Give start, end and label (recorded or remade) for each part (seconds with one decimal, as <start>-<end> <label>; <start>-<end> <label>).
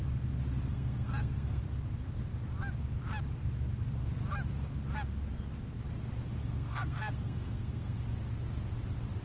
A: 0.0-0.7 recorded; 0.7-1.6 remade; 1.6-6.4 recorded; 6.4-8.0 remade; 8.0-9.2 recorded